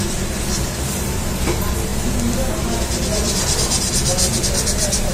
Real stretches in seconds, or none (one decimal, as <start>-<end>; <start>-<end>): 0.0-5.1